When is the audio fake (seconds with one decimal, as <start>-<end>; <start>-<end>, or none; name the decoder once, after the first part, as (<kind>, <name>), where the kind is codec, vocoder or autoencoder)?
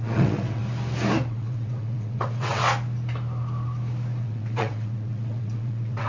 0.0-0.6 (vocoder, WaveNeXt); 1.3-2.6; 4.2-6.1